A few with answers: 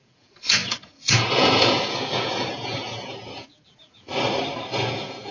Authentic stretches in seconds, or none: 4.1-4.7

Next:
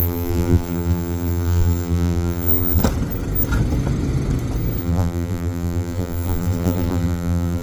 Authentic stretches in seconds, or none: 2.8-4.8

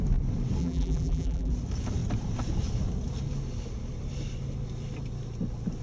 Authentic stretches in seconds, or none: 0.0-0.6; 1.5-5.8